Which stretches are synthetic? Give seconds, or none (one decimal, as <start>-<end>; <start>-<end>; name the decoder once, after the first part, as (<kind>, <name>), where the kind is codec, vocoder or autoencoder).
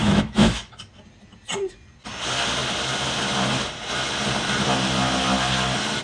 0.0-0.7 (autoencoder, DAC-VAE)